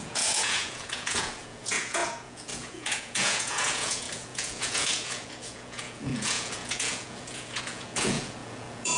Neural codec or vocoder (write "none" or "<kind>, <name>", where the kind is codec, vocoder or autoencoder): vocoder, Vocos